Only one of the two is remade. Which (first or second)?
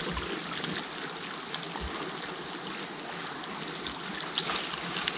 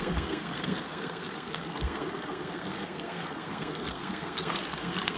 second